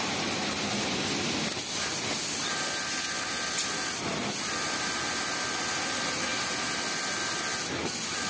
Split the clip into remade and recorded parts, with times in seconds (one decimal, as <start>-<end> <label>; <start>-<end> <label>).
0.0-6.3 recorded; 6.3-7.0 remade; 7.0-8.3 recorded